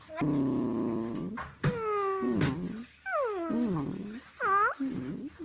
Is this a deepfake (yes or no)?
no